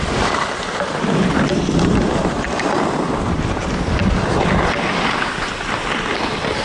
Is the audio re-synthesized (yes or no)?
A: yes